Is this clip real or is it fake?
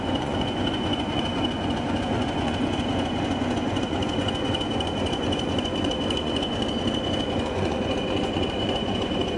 fake